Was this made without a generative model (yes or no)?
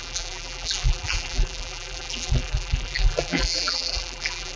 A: no